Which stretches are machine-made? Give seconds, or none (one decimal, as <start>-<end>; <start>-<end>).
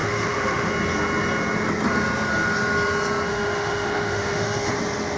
0.0-0.7; 3.3-4.7